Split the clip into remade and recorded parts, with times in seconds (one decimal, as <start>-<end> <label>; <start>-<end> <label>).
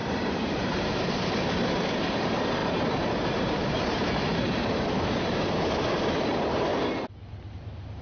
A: 0.0-6.7 remade; 6.7-7.5 recorded; 7.5-8.0 remade